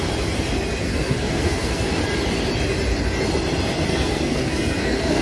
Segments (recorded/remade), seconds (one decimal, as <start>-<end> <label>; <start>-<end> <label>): 0.0-0.8 recorded; 0.8-2.0 remade; 2.0-3.9 recorded; 3.9-5.2 remade